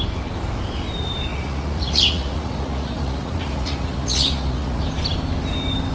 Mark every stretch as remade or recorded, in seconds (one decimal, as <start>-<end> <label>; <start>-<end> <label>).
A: 0.0-1.3 recorded; 1.3-4.8 remade; 4.8-5.9 recorded